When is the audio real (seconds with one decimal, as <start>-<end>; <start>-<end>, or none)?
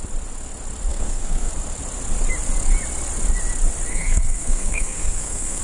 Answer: 0.0-0.9; 1.5-3.9